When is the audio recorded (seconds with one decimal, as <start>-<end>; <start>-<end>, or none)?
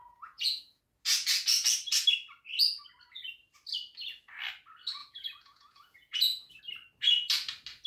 0.8-5.0; 6.6-7.9